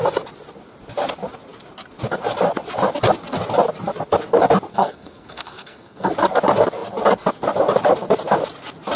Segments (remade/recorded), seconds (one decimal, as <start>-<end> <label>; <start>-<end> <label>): 0.0-4.7 recorded; 4.7-6.1 remade; 6.1-9.0 recorded